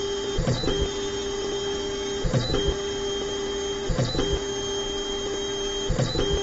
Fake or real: real